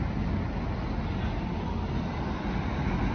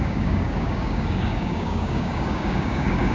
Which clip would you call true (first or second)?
first